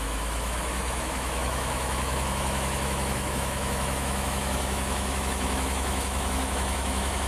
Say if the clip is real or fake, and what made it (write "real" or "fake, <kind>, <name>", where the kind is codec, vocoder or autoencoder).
fake, autoencoder, DAC-VAE